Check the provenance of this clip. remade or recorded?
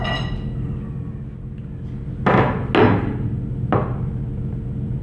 recorded